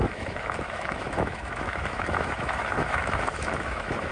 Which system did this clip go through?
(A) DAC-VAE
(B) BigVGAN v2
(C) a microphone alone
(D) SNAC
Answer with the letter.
A